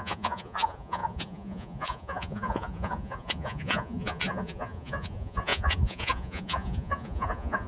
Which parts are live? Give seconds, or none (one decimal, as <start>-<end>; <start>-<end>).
none